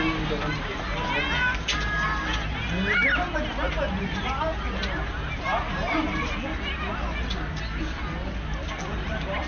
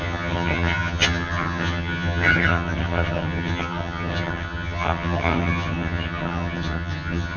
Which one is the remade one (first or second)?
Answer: second